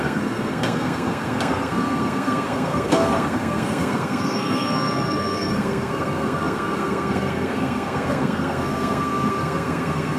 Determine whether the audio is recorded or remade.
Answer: remade